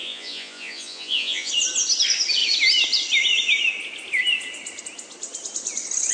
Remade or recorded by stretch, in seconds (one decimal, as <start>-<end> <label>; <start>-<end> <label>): 0.0-1.5 remade; 1.5-6.1 recorded